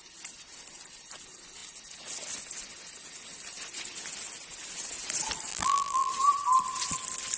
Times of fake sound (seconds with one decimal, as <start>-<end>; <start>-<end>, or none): 5.5-6.1